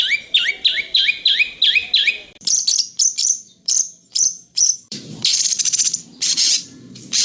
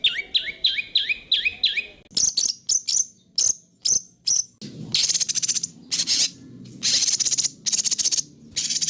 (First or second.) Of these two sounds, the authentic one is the second